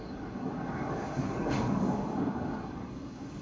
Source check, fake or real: fake